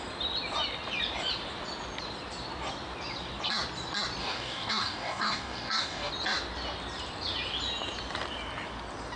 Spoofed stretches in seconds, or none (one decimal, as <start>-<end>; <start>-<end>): 4.2-6.1